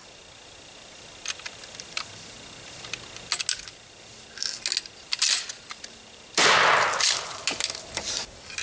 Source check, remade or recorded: recorded